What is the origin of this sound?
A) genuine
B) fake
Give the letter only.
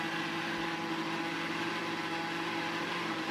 A